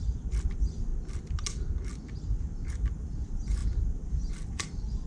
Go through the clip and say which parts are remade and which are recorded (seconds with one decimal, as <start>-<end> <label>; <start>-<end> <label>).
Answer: 0.0-0.9 remade; 0.9-2.7 recorded; 2.7-5.1 remade